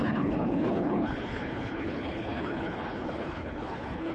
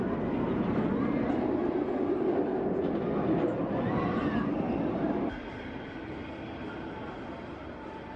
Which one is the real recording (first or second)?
second